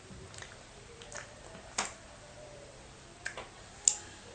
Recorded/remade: recorded